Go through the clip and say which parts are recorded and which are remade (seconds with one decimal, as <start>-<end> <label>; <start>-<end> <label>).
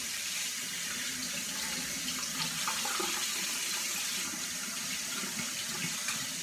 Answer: 0.0-6.4 recorded